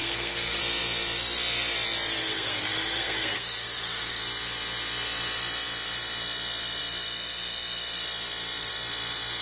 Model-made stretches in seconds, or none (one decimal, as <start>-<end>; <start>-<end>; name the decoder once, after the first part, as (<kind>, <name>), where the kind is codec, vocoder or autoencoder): 0.0-0.6 (codec, SNAC); 2.2-4.2